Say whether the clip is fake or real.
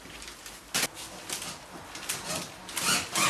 real